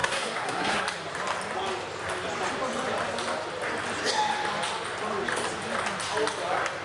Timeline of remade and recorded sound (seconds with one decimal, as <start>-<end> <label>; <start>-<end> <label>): 0.0-0.8 remade; 0.8-6.8 recorded